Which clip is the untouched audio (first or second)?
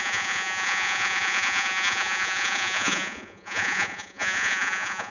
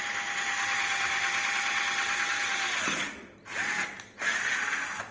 second